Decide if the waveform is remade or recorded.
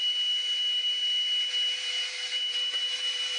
remade